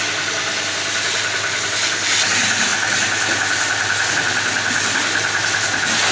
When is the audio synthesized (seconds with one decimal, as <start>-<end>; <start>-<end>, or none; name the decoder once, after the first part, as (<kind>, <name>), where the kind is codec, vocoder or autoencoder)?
none